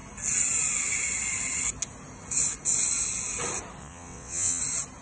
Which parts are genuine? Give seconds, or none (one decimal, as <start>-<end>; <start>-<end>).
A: 0.0-3.8; 4.6-5.0